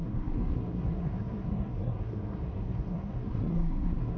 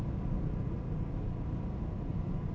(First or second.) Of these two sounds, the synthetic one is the first